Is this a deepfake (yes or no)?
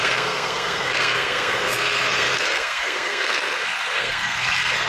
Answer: yes